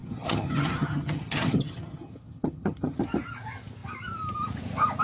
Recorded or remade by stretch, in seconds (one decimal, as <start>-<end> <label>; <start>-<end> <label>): 0.0-3.0 remade; 3.0-5.0 recorded